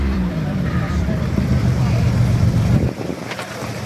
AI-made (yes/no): yes